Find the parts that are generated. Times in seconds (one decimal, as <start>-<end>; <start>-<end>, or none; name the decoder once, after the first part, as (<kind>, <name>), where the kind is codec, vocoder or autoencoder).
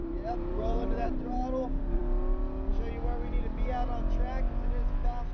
0.0-2.0 (vocoder, BigVGAN v2)